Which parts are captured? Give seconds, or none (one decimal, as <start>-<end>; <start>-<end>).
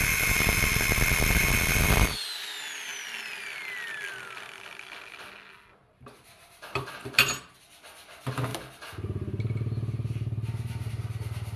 0.0-5.8; 7.6-8.5; 10.9-11.6